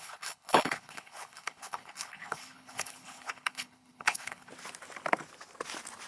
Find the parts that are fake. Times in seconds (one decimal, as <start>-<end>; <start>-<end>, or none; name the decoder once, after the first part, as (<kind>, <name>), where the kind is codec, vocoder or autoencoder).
0.0-4.5 (codec, HILCodec)